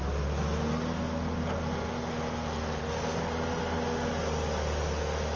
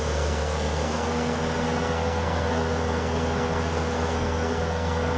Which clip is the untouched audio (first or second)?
first